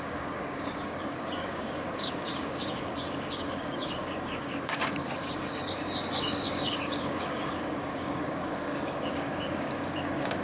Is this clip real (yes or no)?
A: no